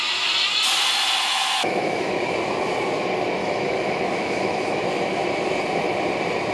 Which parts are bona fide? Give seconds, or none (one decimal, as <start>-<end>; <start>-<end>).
0.0-1.3; 2.1-3.4; 4.8-6.5